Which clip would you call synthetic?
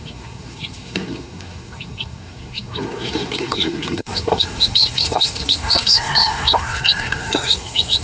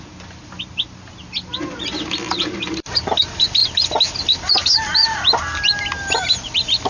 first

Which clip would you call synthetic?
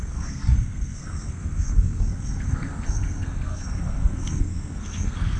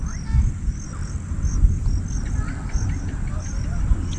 first